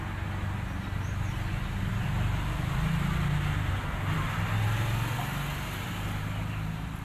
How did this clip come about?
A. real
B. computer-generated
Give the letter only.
A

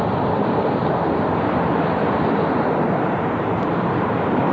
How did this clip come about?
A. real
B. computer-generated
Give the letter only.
A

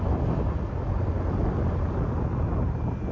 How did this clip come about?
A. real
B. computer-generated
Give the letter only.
A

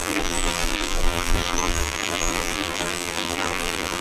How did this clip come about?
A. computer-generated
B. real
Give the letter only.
A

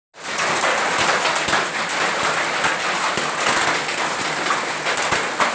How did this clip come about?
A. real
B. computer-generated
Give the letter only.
A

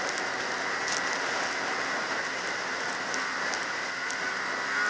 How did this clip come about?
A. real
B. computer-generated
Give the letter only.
A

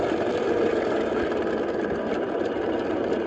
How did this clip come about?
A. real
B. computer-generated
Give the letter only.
B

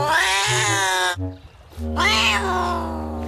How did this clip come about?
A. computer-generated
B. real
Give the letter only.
B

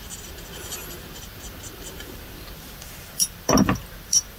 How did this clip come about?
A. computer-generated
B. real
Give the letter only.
A